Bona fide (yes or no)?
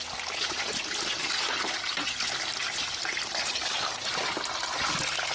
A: yes